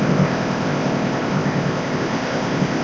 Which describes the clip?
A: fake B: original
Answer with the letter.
A